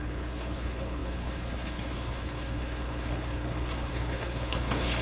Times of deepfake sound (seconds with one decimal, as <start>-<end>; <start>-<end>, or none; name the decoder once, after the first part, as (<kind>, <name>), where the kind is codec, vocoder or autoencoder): 0.0-5.0 (codec, HILCodec)